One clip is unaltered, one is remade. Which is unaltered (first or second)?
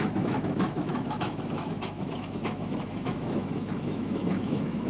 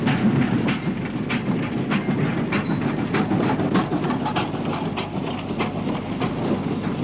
second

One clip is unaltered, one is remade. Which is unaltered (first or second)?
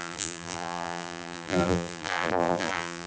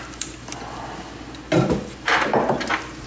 second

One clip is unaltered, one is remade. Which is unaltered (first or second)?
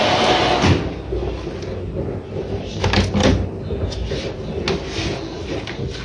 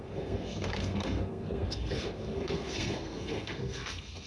first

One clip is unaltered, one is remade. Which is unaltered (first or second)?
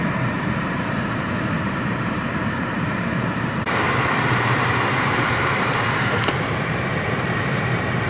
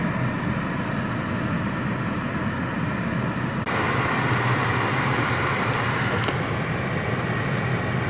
second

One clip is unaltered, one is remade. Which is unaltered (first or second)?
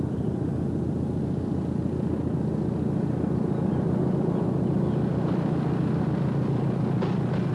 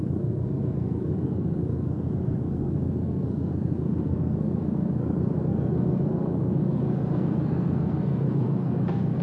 first